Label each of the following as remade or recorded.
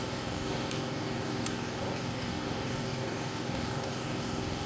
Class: remade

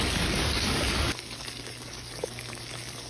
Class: remade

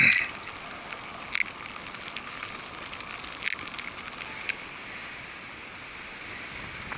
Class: recorded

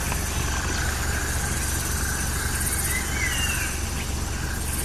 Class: recorded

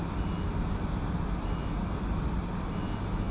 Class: recorded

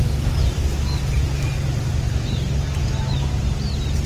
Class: recorded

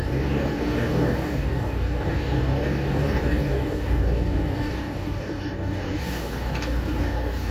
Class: remade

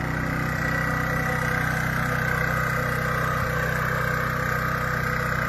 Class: recorded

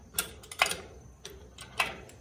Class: recorded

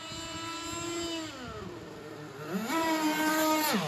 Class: recorded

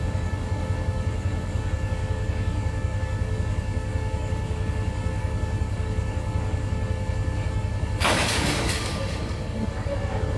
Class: remade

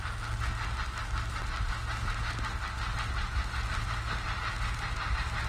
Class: recorded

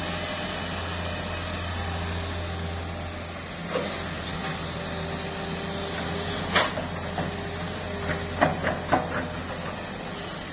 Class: recorded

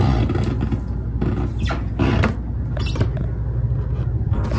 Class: recorded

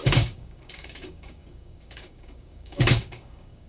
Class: remade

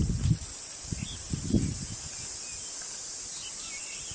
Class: recorded